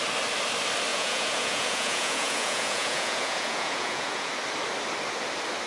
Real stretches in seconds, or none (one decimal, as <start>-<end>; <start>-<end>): 0.0-0.9; 4.3-5.7